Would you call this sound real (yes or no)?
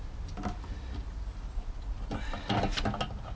yes